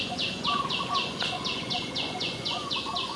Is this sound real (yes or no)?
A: no